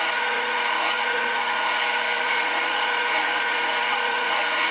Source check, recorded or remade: remade